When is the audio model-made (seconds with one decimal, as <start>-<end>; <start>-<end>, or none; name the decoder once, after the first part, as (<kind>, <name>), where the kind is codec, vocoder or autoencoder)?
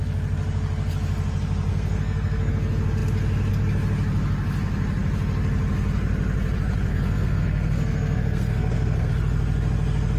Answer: 1.7-2.5 (codec, SNAC); 6.9-9.1